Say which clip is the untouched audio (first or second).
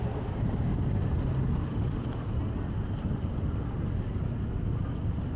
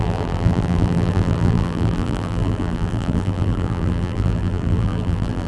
first